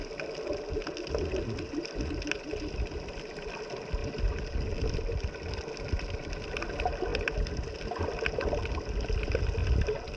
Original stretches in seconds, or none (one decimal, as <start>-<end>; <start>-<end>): 0.0-10.2